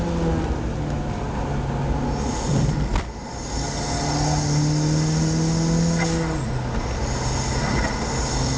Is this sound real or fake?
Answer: real